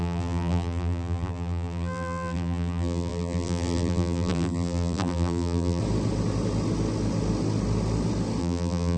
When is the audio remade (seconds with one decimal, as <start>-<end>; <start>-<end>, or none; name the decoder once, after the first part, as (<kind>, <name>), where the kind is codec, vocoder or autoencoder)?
0.0-5.8 (vocoder, BigVGAN v2); 8.4-9.0